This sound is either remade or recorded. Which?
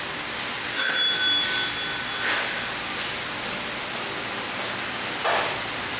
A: recorded